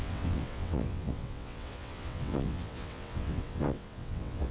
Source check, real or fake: fake